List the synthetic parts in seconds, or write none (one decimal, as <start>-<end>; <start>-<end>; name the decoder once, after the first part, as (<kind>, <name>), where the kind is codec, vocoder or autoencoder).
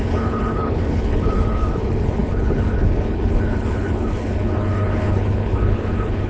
0.0-6.3 (codec, HILCodec)